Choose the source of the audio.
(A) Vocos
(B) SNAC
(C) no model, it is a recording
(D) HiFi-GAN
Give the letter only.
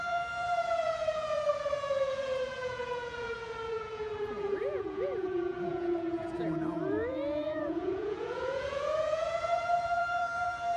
A